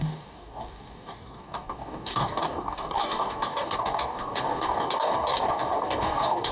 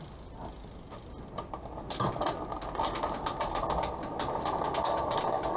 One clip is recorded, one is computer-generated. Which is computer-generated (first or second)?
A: first